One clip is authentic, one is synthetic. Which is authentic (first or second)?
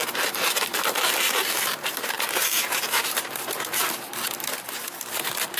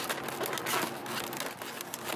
second